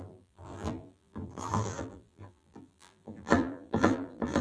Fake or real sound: fake